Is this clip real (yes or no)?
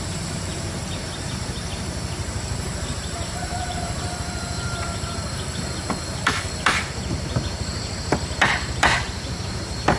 no